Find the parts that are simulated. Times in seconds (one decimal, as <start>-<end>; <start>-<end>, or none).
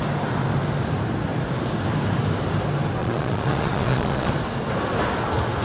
3.0-4.3